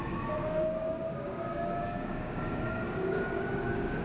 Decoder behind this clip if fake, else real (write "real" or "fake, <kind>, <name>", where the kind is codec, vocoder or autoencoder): fake, codec, DAC